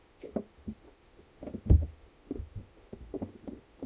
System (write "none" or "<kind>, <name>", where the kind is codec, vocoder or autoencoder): autoencoder, DAC-VAE